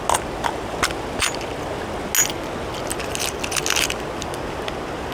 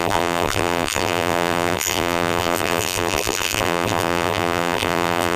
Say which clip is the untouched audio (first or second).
first